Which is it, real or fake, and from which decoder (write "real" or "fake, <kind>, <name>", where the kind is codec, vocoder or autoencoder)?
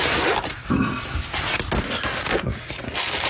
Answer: real